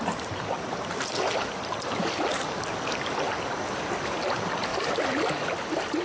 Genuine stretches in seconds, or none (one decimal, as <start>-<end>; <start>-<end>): 0.0-6.0